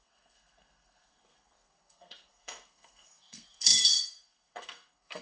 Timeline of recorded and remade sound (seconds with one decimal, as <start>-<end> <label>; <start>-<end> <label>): 0.0-5.2 remade